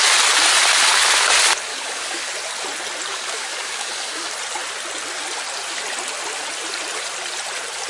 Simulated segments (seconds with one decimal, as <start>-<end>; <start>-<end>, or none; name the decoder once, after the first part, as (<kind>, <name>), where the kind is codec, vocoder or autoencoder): 1.7-2.3 (codec, DAC); 3.1-4.3